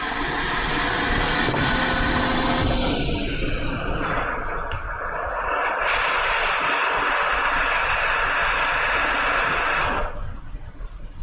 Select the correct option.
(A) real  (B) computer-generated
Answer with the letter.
A